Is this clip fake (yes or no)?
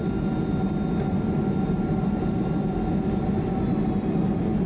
no